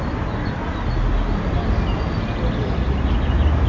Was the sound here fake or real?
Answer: real